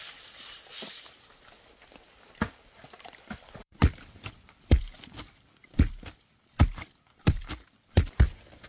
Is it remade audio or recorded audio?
remade